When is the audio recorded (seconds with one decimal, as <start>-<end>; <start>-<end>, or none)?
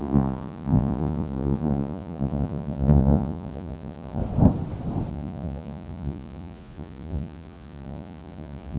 4.2-5.1